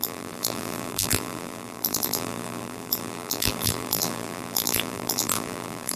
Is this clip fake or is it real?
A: fake